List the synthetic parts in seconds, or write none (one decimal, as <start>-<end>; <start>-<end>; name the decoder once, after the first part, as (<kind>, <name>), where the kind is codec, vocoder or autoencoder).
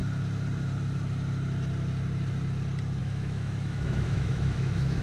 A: 3.0-5.0 (autoencoder, DAC-VAE)